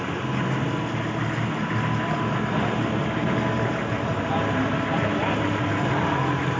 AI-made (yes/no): no